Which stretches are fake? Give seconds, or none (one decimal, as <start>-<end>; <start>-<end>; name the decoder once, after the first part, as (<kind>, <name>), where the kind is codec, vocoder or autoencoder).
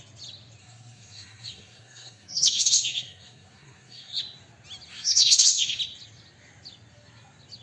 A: 0.6-4.2 (codec, SNAC); 4.9-5.8